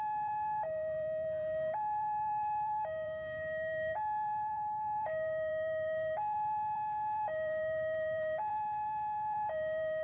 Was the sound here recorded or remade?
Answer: remade